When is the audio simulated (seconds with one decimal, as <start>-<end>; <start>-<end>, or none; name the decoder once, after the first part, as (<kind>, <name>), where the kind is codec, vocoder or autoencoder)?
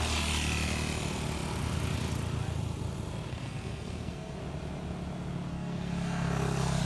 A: 3.3-4.4 (codec, SNAC); 5.5-6.8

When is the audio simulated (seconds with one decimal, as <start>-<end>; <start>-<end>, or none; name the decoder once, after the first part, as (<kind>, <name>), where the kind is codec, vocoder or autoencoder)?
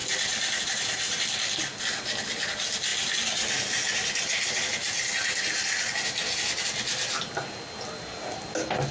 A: none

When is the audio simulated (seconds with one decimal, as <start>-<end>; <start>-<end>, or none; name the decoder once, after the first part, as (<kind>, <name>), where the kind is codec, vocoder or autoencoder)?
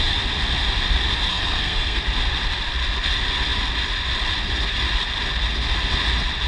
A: 1.3-2.0 (codec, SNAC)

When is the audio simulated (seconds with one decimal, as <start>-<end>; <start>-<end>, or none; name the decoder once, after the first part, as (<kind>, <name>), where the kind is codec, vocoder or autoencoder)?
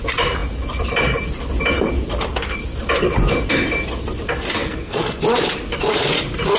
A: 4.6-5.2 (codec, SNAC)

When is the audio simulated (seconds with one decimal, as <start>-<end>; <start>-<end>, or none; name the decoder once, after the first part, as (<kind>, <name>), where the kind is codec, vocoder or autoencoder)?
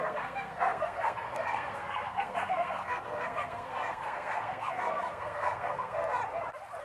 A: 0.0-6.2 (codec, SNAC)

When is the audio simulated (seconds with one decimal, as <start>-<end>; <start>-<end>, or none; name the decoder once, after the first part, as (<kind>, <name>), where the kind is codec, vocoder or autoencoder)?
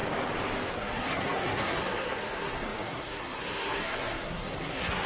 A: 0.7-5.1 (codec, SNAC)